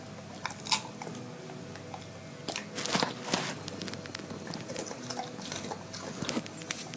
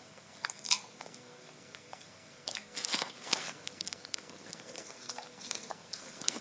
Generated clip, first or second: second